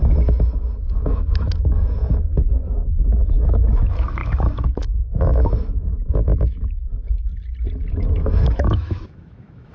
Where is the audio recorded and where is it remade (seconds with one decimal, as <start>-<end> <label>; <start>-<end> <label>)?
0.0-7.3 remade; 7.3-7.9 recorded; 7.9-9.7 remade